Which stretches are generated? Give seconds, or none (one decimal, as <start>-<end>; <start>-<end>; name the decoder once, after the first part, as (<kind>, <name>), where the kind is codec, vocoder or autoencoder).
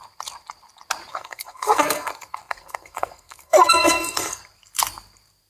1.1-4.4 (codec, SNAC)